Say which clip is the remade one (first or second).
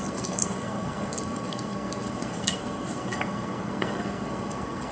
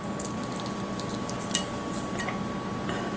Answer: first